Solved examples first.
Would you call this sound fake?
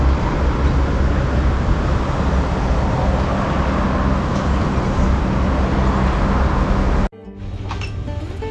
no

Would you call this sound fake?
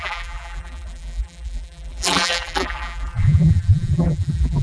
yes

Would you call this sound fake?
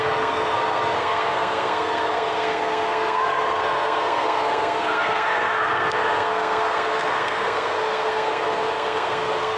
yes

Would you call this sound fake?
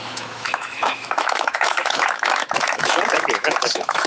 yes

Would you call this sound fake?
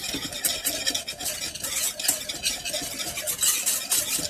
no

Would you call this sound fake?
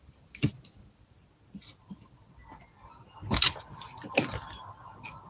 no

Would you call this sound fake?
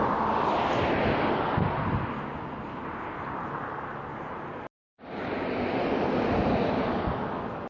no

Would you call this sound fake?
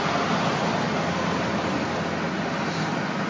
no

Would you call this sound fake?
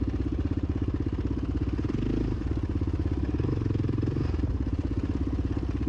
no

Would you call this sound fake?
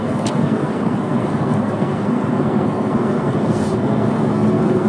yes